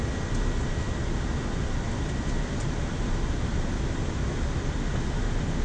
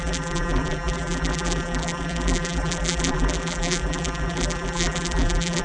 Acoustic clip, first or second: first